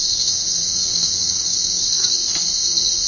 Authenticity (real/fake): fake